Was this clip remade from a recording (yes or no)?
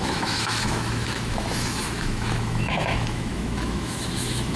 yes